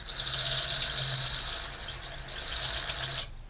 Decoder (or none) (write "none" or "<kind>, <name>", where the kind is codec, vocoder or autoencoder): none